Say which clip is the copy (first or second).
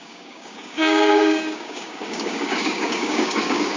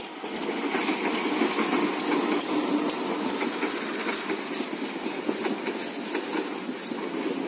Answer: first